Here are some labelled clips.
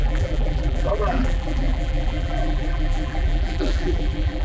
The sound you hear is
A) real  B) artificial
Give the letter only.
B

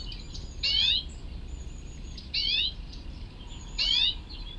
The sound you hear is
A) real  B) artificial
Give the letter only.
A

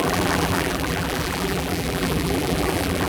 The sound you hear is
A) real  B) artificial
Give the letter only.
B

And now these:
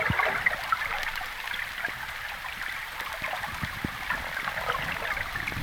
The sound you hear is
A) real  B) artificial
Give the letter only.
A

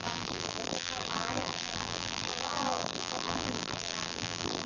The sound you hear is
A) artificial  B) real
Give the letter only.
A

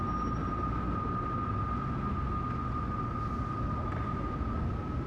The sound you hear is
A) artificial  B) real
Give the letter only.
B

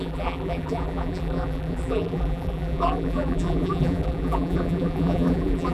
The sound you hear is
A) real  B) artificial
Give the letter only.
B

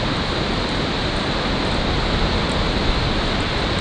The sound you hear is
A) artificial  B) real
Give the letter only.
B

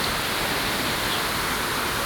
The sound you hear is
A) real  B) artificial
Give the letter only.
A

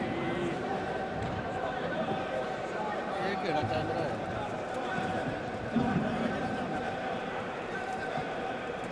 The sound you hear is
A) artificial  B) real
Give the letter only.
A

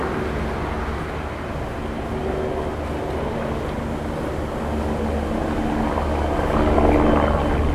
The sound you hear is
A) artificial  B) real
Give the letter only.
B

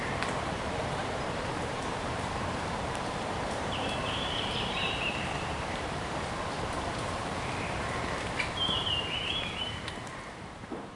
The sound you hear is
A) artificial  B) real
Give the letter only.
A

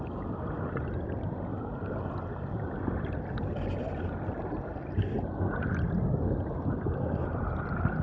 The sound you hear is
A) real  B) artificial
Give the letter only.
B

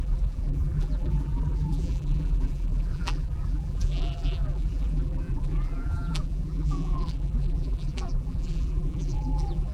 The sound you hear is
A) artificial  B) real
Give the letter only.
A